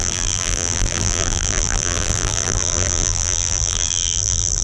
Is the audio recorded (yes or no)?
no